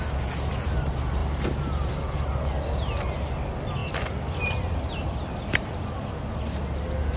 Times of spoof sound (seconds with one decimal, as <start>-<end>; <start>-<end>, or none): none